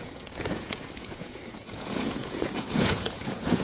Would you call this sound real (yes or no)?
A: no